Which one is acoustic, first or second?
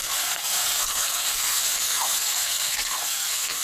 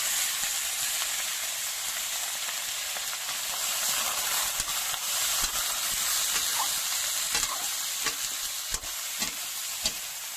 second